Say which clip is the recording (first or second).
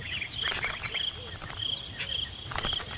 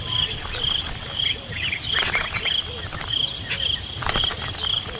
first